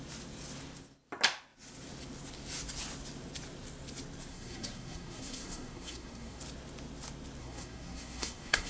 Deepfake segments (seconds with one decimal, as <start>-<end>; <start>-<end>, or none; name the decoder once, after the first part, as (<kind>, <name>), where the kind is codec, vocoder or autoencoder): 4.3-6.4 (codec, SNAC); 7.4-8.7